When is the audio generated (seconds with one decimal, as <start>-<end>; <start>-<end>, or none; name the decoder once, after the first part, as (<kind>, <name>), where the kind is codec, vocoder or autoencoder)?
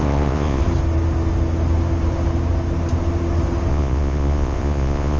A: 0.0-0.6 (vocoder, Vocos); 3.7-5.2